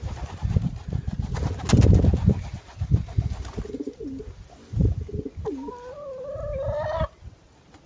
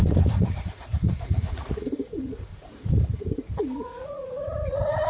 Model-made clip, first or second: second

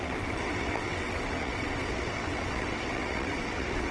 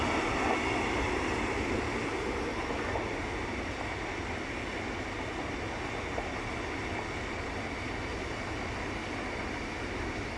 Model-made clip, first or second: first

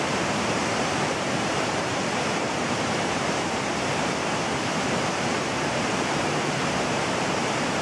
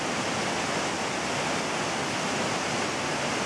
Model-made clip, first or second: first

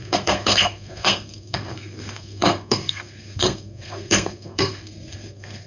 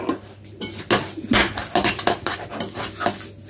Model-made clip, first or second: first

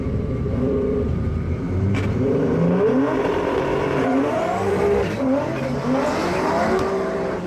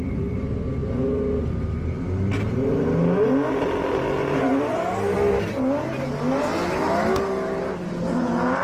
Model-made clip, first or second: first